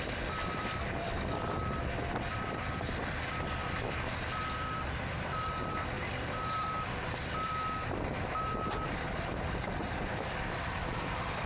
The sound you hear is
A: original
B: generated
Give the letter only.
B